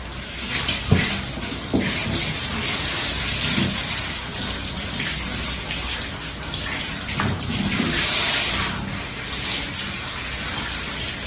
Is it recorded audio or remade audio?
recorded